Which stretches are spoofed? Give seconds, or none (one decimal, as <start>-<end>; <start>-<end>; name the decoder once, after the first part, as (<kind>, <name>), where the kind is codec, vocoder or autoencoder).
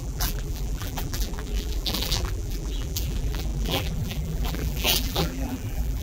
0.0-6.0 (vocoder, BigVGAN v2)